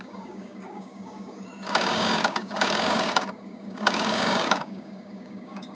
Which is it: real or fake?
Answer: fake